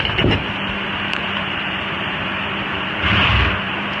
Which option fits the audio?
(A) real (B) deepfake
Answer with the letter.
B